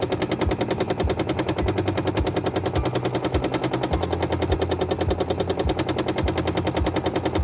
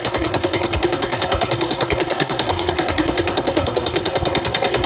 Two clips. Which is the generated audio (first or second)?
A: second